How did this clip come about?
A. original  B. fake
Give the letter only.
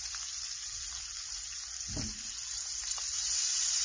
A